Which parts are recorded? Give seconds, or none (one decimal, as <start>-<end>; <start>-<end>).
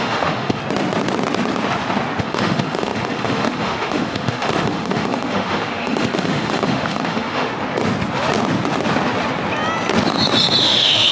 0.6-2.2; 7.5-10.6